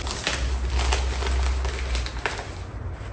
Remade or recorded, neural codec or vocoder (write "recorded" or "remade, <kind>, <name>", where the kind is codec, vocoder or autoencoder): recorded